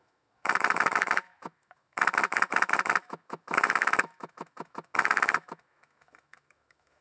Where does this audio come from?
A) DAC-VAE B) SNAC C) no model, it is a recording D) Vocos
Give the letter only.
A